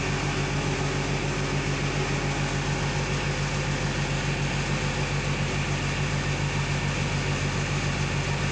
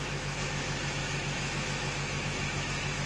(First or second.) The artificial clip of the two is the second